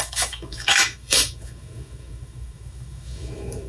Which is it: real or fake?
fake